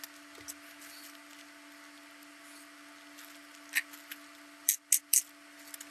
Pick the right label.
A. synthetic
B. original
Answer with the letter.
B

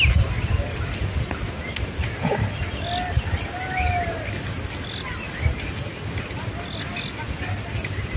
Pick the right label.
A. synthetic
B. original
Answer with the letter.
B